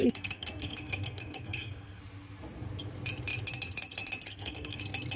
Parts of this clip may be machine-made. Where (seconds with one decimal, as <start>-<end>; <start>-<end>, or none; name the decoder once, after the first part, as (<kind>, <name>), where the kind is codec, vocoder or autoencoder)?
0.0-2.0 (codec, SNAC); 4.3-4.8